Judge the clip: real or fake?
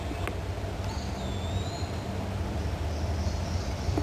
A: real